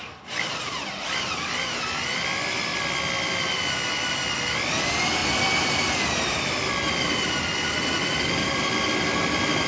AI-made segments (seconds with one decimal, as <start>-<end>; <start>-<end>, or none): none